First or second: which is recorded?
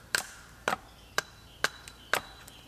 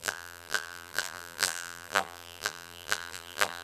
first